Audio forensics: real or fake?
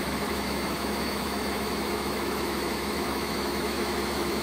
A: fake